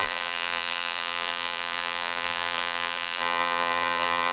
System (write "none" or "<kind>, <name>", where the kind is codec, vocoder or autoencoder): vocoder, BigVGAN v2